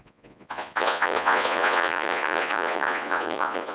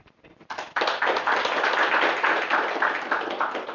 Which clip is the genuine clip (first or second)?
second